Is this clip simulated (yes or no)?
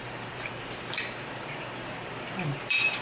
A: yes